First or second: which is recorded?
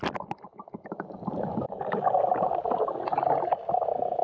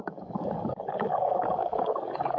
first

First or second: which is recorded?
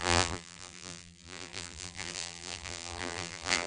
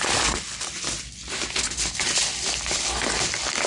second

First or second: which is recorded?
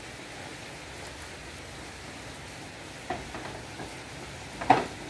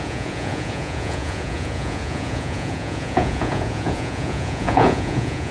first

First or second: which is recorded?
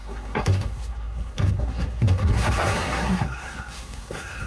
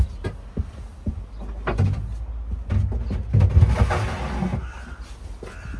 second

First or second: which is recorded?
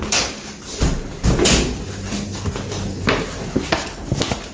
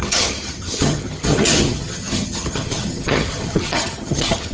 first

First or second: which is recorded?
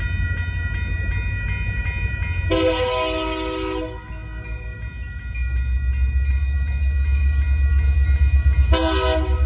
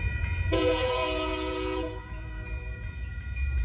first